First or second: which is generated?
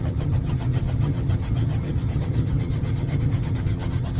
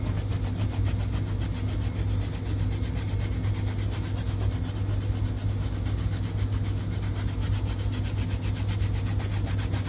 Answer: first